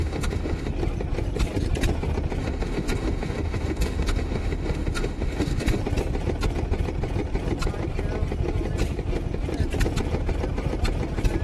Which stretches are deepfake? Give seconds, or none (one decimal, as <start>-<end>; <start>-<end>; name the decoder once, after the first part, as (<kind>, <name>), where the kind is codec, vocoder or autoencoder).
0.0-0.7 (autoencoder, DAC-VAE); 2.4-5.8